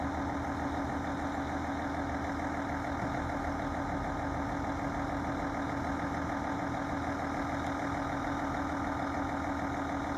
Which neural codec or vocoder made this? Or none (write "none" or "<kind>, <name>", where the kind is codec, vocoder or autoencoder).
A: none